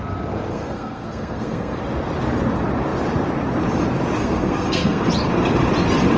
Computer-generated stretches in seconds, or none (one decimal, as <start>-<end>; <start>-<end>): 0.5-1.8; 4.2-5.1

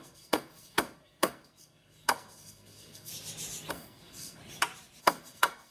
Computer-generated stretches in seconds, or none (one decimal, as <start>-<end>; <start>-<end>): 0.0-3.1; 3.7-4.4; 5.0-5.7

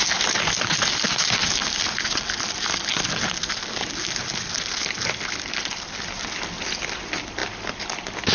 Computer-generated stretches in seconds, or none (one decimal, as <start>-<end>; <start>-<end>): none

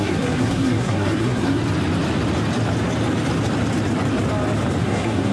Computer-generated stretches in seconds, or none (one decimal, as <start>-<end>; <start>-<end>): 0.0-1.6; 4.8-5.3

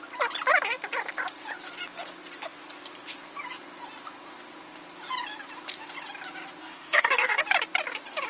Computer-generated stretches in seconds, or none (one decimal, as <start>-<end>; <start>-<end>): 6.6-7.4

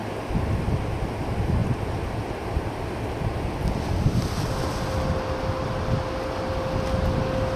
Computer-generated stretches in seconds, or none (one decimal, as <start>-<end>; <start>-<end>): none

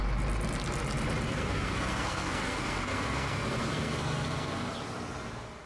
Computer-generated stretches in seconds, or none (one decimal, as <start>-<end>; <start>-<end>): 1.3-4.7